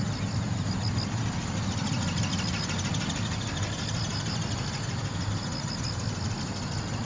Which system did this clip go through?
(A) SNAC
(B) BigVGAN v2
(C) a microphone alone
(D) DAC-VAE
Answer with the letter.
C